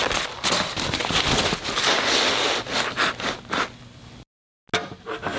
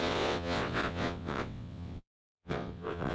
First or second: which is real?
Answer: first